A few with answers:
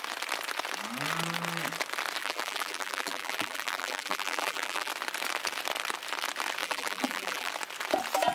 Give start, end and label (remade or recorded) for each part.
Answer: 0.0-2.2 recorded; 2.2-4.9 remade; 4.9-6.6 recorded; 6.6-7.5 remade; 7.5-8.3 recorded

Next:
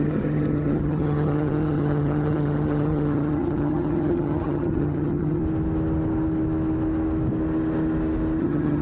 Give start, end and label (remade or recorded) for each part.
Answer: 0.0-5.4 remade; 5.4-8.4 recorded; 8.4-8.8 remade